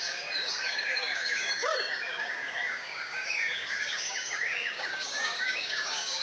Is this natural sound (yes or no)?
no